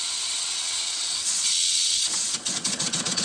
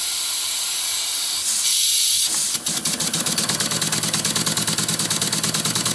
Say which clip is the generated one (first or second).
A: first